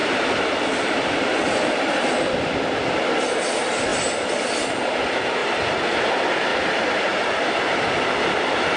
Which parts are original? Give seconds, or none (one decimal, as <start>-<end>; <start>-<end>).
1.5-5.4; 6.1-6.5; 7.8-8.8